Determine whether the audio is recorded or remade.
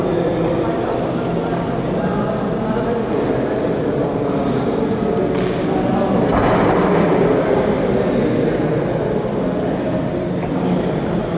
recorded